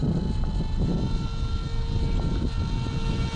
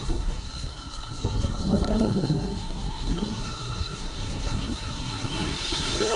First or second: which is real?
first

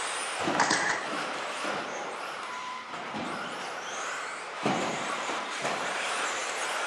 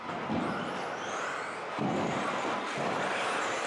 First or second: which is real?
second